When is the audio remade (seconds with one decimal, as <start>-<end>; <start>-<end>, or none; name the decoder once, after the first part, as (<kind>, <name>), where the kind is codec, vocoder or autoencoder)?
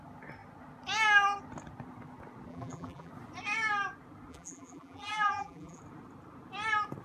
2.5-3.1 (vocoder, BigVGAN v2); 4.3-5.8